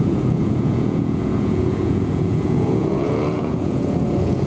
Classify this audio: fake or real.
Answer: fake